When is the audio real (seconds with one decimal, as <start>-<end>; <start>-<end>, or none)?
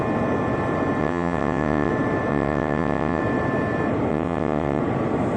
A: 0.0-1.0; 1.9-2.3; 3.2-4.1; 4.8-5.4